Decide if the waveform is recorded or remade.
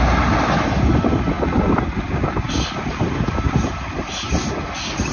recorded